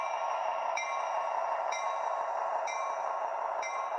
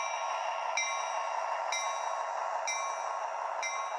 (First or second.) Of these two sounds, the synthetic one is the first